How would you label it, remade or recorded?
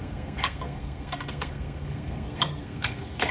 remade